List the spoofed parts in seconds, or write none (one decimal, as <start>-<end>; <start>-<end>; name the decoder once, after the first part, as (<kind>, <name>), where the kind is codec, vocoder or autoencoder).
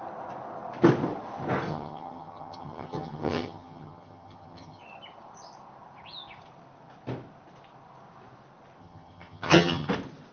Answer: 1.7-4.8 (vocoder, HiFi-GAN); 8.8-9.9